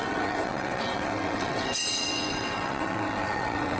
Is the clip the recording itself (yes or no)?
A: no